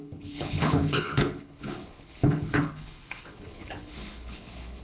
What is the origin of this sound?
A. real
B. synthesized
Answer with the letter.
B